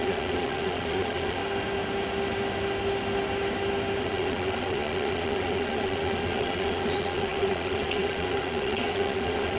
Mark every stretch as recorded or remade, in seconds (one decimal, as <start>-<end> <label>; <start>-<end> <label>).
0.0-1.4 remade; 1.4-4.0 recorded; 4.0-9.6 remade